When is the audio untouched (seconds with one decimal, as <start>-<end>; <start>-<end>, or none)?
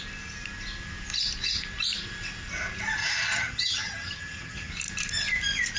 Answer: 0.0-3.0; 4.7-5.8